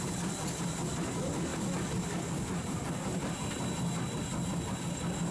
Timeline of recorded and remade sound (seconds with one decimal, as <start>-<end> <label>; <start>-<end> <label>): 0.0-5.3 recorded